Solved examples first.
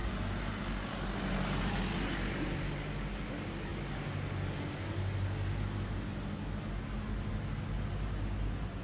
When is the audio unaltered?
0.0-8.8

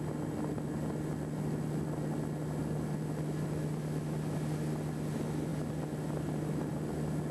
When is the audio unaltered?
0.0-7.3

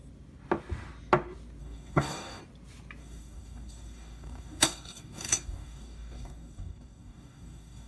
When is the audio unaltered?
0.0-1.6; 2.4-3.0

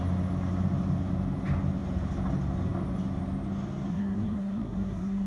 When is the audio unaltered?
0.0-3.9

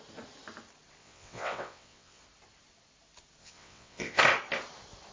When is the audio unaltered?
0.0-1.0; 2.2-3.4; 4.2-5.1